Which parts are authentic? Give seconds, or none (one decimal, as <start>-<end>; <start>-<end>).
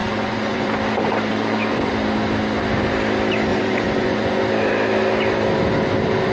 0.7-1.3; 1.9-3.5; 4.4-6.3